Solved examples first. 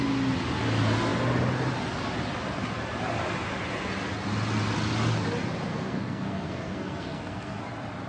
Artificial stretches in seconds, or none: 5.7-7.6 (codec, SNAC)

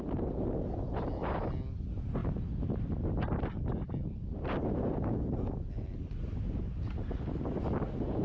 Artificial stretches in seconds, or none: none

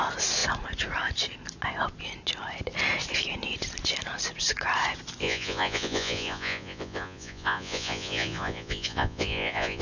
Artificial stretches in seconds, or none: 5.2-9.8 (vocoder, Vocos)